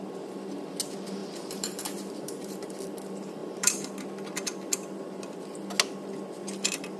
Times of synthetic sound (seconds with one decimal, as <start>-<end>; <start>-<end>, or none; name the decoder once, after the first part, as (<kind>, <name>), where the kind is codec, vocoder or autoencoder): 1.2-2.8 (vocoder, BigVGAN v2); 3.4-3.9